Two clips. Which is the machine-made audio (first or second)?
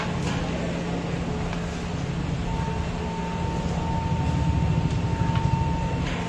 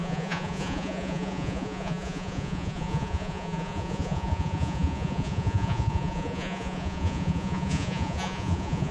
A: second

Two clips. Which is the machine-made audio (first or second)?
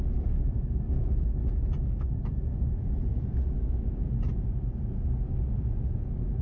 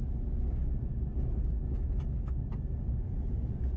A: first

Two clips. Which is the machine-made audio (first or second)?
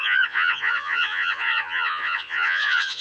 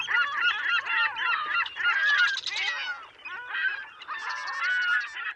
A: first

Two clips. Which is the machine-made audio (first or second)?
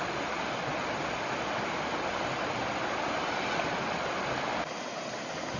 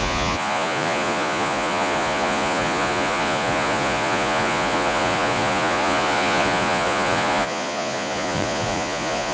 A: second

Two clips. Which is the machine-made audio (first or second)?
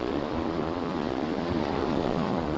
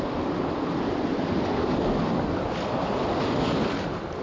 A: first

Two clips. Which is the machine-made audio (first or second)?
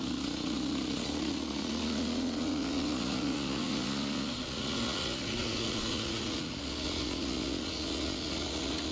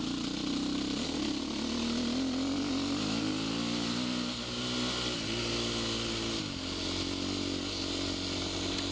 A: first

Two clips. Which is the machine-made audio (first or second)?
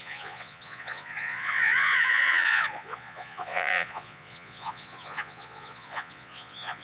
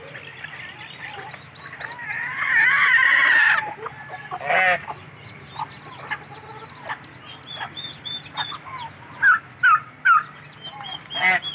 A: first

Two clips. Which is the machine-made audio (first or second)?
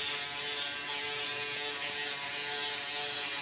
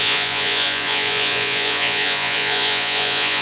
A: second